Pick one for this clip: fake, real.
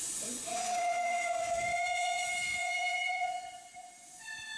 fake